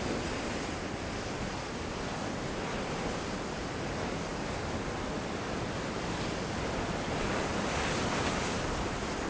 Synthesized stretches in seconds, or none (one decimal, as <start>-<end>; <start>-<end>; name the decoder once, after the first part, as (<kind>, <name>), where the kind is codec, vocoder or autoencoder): none